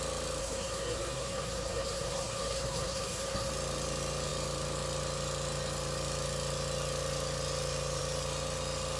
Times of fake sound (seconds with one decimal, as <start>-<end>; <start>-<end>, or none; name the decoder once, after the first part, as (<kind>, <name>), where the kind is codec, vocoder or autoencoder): 0.4-3.5 (codec, SNAC)